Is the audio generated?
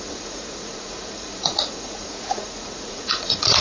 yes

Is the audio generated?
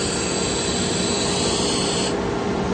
no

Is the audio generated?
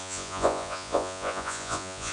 yes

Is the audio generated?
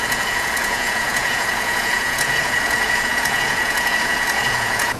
yes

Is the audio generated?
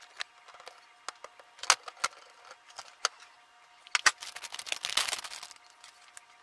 no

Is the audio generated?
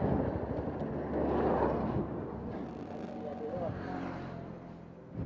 no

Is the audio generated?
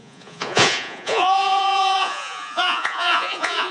yes